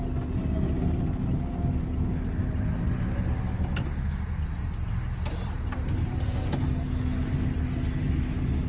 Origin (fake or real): real